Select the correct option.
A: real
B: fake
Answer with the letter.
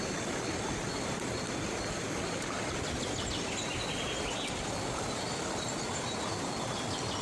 A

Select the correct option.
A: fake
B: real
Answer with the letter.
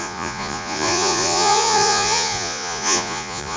A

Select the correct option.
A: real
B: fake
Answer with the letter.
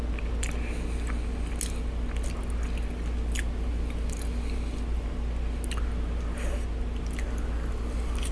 A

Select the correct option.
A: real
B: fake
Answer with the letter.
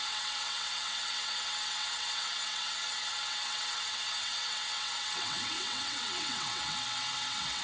B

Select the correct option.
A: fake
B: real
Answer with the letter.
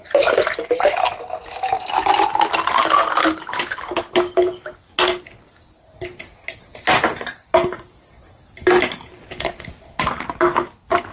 B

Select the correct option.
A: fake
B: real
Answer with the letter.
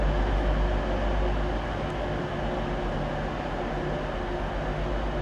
B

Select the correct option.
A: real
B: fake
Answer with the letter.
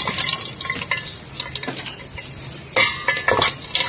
A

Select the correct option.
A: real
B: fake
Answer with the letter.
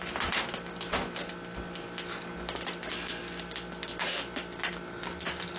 A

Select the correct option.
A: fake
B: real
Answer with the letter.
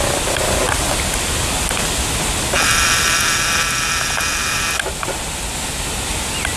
B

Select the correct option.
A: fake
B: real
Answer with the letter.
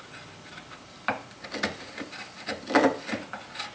B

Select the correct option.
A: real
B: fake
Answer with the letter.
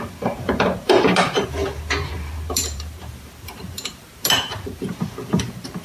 B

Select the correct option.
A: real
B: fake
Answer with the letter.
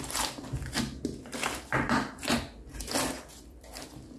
A